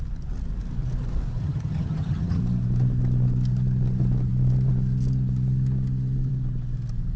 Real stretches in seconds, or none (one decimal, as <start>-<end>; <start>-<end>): 0.0-1.4; 2.4-7.2